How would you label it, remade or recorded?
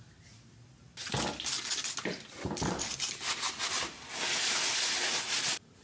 recorded